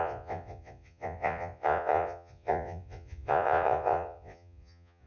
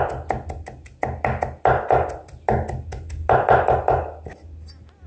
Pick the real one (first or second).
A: second